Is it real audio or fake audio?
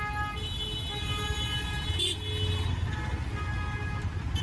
real